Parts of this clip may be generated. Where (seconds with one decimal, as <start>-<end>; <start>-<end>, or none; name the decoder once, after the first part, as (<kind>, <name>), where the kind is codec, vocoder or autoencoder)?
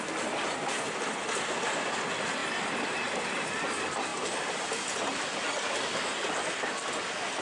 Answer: 4.1-4.7 (vocoder, BigVGAN v2)